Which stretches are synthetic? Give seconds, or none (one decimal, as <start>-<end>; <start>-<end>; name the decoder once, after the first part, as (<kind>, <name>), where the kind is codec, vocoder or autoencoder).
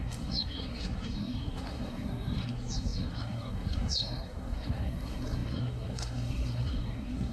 0.0-7.3 (codec, SNAC)